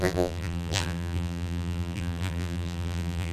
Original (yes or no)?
no